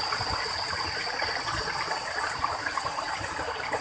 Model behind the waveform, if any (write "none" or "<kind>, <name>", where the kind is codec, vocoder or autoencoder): none